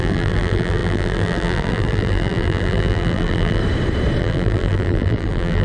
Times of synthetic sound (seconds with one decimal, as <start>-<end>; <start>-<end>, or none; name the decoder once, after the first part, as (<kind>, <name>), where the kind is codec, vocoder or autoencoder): 0.0-3.6 (vocoder, BigVGAN v2); 4.2-5.6